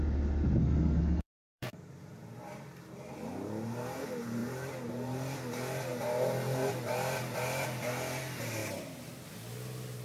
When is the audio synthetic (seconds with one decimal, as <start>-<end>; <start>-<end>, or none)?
0.6-1.8